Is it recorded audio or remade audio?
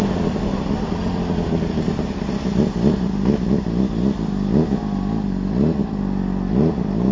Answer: recorded